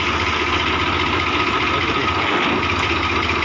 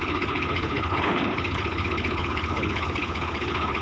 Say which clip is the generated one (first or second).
second